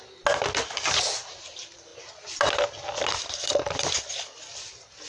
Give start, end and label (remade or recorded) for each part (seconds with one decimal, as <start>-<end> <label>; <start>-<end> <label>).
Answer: 0.0-5.1 recorded